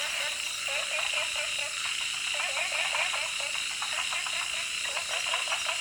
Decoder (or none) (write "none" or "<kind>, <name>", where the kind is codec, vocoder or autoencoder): none